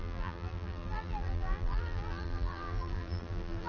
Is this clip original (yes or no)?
no